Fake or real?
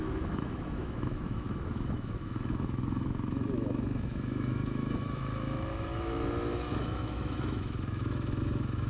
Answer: fake